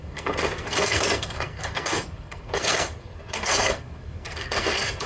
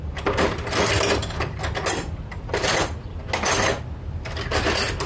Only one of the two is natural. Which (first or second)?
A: second